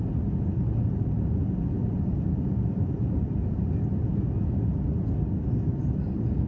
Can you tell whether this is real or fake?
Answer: real